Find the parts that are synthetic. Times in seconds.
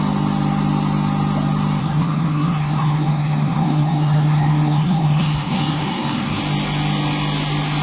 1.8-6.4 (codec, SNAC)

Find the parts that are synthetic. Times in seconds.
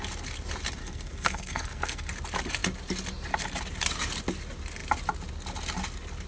0.8-2.1 (codec, SNAC)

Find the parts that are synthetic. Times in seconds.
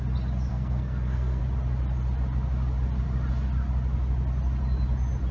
0.5-1.4 (codec, SNAC)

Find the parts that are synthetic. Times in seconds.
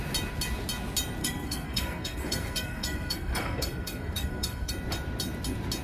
1.2-4.7 (codec, SNAC)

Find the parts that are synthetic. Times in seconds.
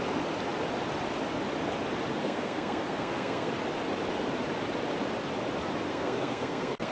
2.2-3.5 (codec, SNAC); 5.9-6.9